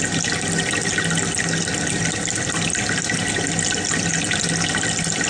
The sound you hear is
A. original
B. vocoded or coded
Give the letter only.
A